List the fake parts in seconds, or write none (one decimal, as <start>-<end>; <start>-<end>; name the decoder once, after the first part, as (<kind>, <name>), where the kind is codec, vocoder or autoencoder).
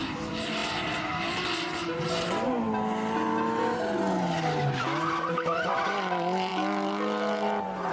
0.0-0.6 (vocoder, BigVGAN v2); 5.3-6.5